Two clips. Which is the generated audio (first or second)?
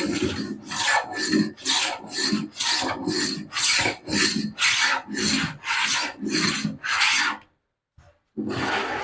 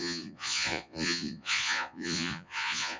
second